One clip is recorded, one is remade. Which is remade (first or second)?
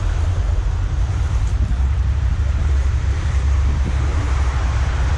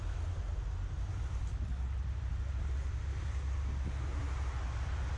first